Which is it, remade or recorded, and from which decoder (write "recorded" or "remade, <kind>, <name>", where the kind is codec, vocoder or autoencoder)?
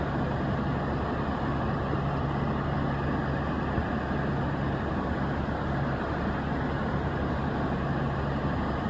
recorded